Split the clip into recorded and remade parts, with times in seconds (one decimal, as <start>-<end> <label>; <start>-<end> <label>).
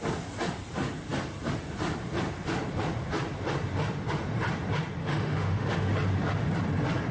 0.0-5.0 recorded; 5.0-5.9 remade; 5.9-7.1 recorded